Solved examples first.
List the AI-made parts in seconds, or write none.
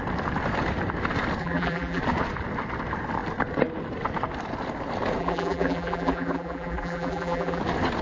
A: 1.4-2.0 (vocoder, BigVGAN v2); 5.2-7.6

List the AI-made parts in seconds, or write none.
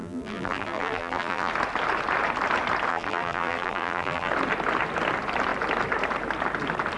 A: 0.0-1.5 (vocoder, BigVGAN v2); 2.9-4.3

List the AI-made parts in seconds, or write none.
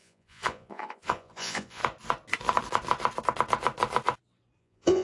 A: 0.0-1.8 (vocoder, Vocos); 4.6-5.0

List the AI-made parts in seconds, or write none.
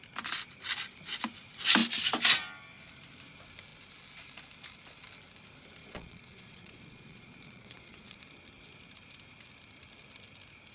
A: 5.8-8.2 (vocoder, Vocos)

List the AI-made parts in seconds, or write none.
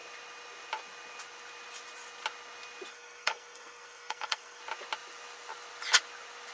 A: 2.9-4.6 (codec, SNAC)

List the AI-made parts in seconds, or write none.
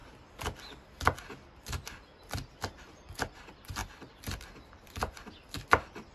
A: 2.8-6.1 (vocoder, BigVGAN v2)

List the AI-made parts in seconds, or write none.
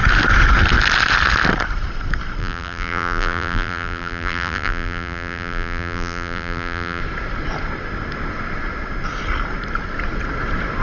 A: 2.4-7.0 (vocoder, BigVGAN v2)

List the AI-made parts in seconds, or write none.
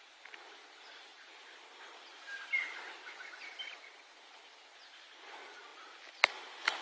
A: none